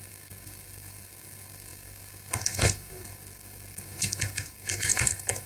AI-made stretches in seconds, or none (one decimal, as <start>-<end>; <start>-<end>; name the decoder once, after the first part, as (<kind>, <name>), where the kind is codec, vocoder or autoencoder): 0.0-5.5 (codec, SNAC)